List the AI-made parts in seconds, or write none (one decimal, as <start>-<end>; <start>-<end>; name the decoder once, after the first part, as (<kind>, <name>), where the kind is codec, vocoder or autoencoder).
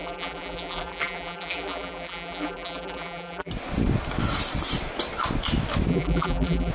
0.0-3.5 (vocoder, BigVGAN v2); 5.9-6.7